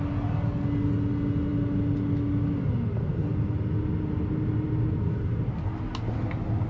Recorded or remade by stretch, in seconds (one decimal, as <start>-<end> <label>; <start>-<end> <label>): 0.0-6.7 recorded